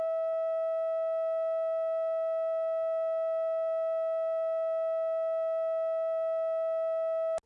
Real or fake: real